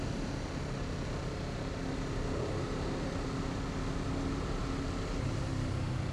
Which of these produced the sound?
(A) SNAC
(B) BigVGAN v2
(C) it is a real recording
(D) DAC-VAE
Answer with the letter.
C